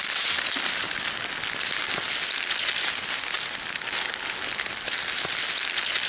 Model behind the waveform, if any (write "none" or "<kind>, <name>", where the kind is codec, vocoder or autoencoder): none